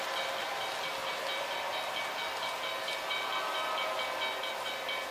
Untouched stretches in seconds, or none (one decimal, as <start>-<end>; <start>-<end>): 0.0-5.1